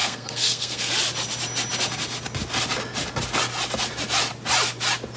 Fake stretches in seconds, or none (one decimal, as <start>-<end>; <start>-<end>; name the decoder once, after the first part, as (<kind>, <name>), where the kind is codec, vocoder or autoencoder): 0.0-0.9 (codec, SNAC)